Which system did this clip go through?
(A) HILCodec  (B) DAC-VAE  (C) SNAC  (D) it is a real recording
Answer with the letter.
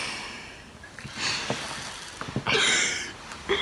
D